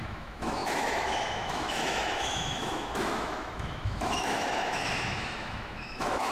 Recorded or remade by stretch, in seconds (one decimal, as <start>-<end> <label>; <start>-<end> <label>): 0.0-6.3 remade

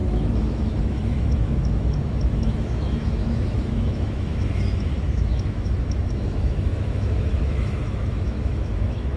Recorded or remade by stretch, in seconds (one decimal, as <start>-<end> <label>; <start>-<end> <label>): 0.0-9.2 remade

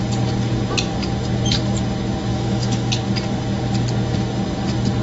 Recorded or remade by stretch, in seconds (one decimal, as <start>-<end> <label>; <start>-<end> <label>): 0.0-2.3 recorded; 2.3-2.9 remade; 2.9-5.0 recorded

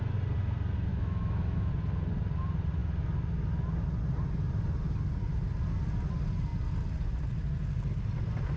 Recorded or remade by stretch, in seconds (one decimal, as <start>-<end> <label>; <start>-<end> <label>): 0.0-0.9 recorded; 0.9-1.7 remade; 1.7-8.6 recorded

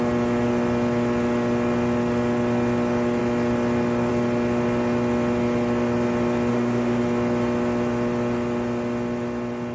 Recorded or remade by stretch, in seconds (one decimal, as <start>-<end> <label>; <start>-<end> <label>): 0.0-6.5 recorded; 6.5-7.0 remade; 7.0-9.7 recorded

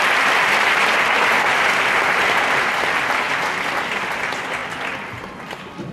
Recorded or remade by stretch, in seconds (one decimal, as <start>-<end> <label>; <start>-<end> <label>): 0.0-5.9 recorded